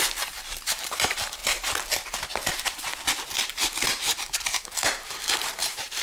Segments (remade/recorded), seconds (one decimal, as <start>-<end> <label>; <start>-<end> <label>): 0.0-1.4 remade; 1.4-2.5 recorded; 2.5-2.9 remade; 2.9-3.4 recorded; 3.4-6.0 remade